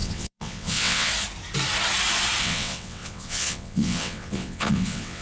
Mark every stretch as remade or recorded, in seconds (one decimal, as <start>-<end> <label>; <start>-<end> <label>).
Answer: 0.0-1.1 remade; 1.1-2.4 recorded; 2.4-5.2 remade